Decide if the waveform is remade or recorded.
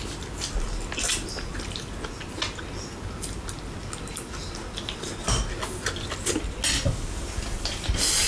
recorded